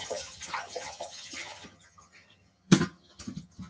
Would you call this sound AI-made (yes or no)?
yes